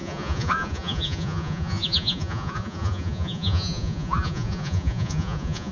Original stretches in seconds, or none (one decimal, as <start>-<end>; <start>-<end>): none